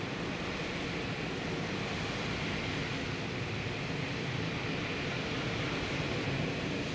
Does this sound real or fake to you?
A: real